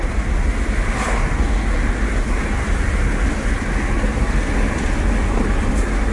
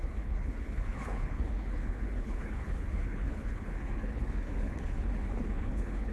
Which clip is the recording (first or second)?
first